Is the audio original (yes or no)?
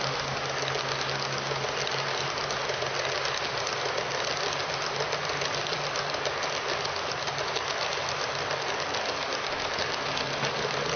yes